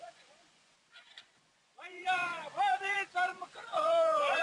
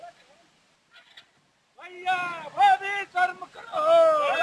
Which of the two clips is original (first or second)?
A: second